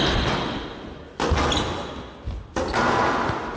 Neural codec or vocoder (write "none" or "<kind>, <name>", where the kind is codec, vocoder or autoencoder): none